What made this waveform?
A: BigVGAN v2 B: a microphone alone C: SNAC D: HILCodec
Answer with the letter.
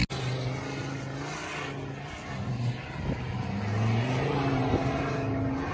B